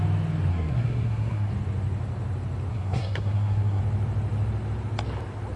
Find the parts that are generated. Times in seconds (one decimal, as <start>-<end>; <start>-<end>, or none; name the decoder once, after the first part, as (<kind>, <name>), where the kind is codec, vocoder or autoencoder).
0.5-1.5 (codec, SNAC); 2.7-3.8